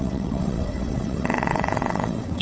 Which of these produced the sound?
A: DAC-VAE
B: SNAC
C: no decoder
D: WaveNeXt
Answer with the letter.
D